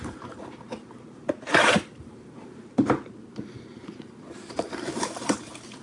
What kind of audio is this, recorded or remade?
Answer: remade